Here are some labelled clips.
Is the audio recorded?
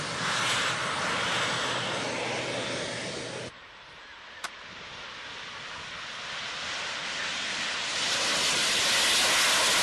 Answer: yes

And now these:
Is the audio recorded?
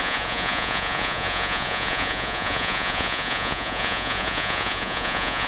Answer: no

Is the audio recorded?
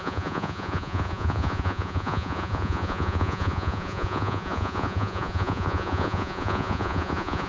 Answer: no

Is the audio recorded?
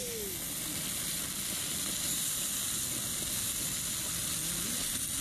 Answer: yes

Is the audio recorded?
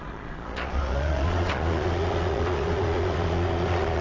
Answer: no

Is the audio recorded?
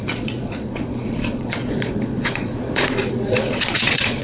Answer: no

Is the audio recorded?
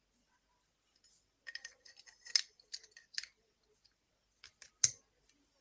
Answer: yes